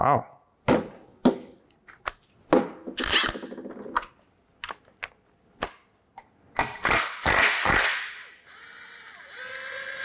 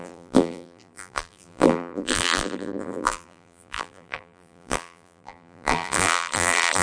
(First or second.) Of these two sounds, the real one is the first